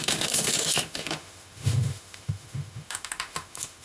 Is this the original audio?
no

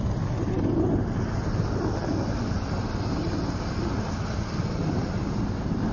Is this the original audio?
yes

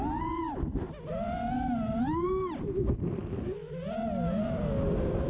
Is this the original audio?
yes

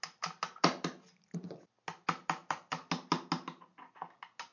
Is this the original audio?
yes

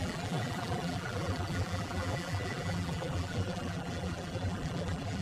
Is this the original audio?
no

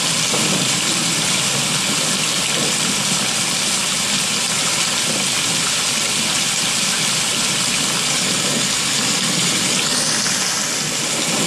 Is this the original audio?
yes